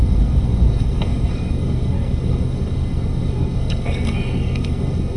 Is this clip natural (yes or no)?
no